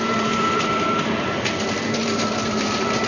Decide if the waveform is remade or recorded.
remade